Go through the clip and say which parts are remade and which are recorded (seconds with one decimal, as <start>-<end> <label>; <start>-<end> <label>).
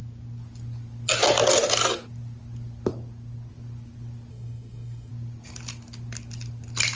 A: 0.0-4.3 recorded; 4.3-5.1 remade; 5.1-7.0 recorded